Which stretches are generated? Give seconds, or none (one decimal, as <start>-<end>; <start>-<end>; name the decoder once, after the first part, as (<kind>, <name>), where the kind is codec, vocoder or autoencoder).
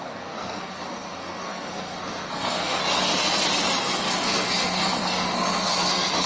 0.0-2.8 (codec, SNAC); 3.8-6.3